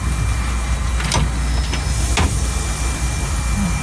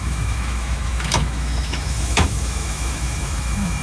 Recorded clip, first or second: first